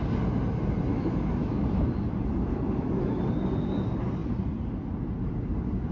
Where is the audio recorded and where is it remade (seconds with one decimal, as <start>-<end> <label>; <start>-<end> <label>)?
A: 0.0-0.9 recorded; 0.9-1.8 remade; 1.8-2.5 recorded; 2.5-3.2 remade; 3.2-5.9 recorded